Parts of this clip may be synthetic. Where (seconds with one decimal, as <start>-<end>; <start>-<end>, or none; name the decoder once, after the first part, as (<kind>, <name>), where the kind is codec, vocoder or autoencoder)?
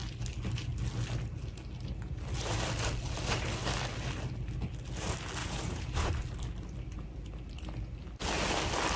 5.4-6.1 (vocoder, Vocos)